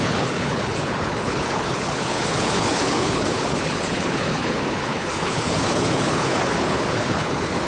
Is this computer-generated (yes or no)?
yes